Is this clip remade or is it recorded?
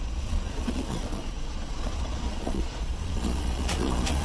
remade